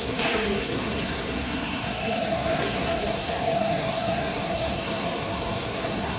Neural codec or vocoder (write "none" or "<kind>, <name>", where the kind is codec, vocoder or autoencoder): codec, SNAC